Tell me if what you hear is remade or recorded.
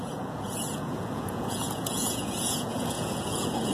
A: remade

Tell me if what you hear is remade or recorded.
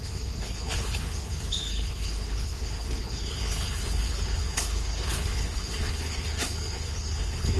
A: remade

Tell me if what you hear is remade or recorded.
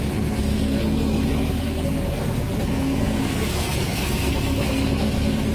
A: remade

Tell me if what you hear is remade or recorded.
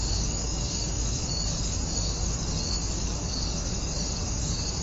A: remade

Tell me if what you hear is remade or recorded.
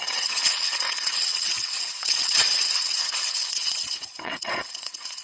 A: remade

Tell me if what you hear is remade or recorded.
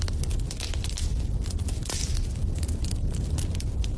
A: recorded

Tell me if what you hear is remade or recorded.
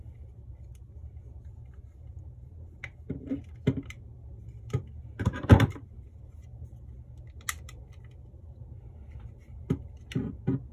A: recorded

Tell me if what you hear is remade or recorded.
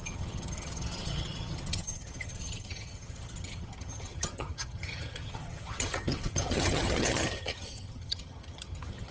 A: remade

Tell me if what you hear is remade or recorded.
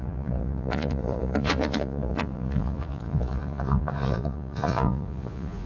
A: remade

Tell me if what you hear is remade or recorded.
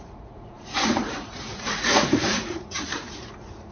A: remade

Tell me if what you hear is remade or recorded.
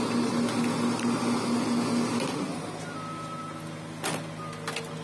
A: recorded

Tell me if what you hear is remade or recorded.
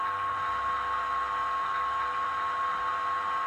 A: recorded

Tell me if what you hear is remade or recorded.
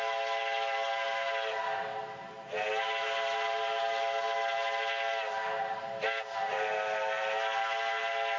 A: recorded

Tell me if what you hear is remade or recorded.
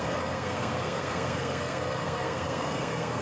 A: remade